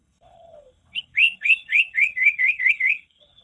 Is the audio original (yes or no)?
no